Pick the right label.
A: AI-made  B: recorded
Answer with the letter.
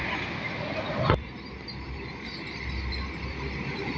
B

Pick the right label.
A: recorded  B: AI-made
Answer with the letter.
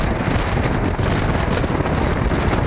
A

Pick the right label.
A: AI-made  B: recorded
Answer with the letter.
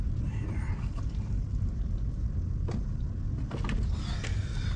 B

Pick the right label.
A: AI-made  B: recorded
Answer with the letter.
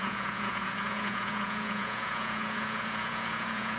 A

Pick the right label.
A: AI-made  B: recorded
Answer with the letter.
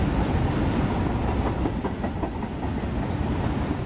B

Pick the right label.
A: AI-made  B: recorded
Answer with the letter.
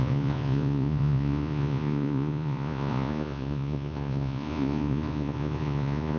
A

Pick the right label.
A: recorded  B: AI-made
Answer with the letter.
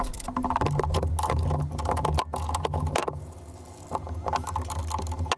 A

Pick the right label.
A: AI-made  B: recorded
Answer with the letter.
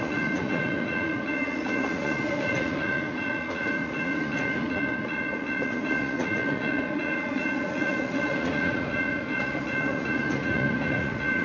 A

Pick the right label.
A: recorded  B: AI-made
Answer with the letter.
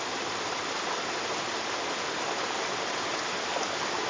A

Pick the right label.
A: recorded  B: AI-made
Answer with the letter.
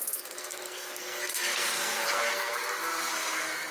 B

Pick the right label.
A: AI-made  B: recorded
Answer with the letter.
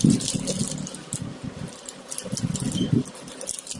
B